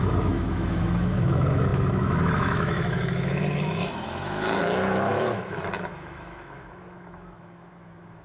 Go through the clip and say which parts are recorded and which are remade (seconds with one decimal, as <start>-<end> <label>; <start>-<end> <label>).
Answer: 0.0-8.2 remade